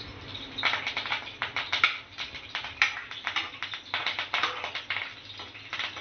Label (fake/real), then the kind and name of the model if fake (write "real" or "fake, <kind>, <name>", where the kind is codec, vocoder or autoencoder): real